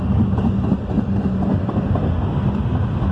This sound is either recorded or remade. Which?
recorded